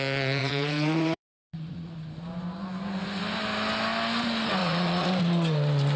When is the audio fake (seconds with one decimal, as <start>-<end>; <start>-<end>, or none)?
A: 0.4-1.9; 4.6-5.1